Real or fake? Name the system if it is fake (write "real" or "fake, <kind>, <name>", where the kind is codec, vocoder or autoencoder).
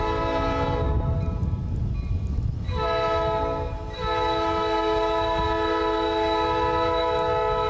real